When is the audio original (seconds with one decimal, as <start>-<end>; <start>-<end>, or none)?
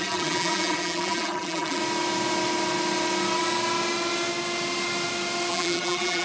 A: 1.8-5.5